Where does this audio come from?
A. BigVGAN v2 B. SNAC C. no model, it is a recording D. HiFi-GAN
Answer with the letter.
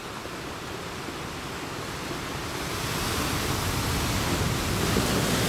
C